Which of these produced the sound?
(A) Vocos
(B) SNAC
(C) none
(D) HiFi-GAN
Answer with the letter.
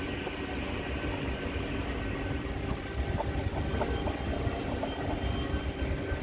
C